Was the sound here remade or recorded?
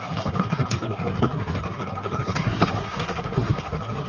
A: remade